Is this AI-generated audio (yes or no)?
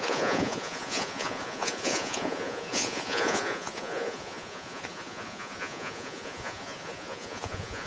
yes